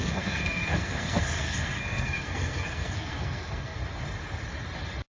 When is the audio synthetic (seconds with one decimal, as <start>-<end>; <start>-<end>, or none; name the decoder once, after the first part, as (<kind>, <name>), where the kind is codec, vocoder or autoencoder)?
0.0-3.8 (codec, SNAC)